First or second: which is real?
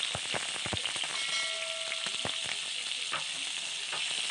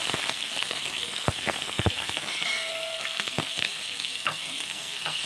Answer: first